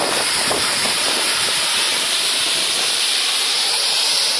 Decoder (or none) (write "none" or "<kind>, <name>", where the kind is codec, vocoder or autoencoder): vocoder, BigVGAN v2